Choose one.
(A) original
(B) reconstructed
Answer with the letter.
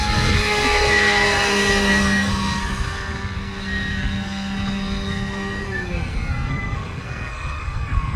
B